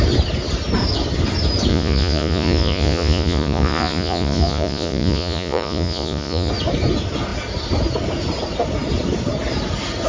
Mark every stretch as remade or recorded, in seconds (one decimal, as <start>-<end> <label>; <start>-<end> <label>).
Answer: 0.0-1.7 recorded; 1.7-6.5 remade; 6.5-10.1 recorded